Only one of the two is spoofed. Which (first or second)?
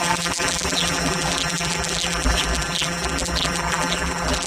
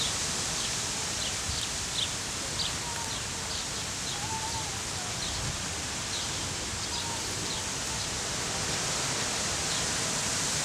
first